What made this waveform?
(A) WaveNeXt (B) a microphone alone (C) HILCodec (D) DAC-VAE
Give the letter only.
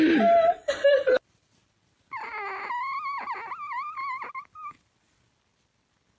B